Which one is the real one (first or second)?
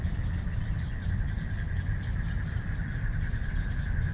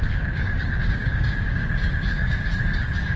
first